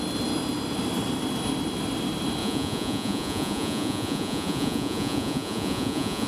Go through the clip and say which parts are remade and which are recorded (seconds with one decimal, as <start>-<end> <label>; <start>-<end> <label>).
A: 0.0-2.4 recorded; 2.4-6.3 remade

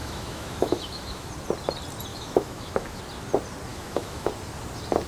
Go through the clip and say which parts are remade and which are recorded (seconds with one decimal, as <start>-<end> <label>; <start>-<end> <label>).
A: 0.0-1.3 remade; 1.3-2.1 recorded; 2.1-3.0 remade; 3.0-3.7 recorded; 3.7-4.3 remade; 4.3-5.1 recorded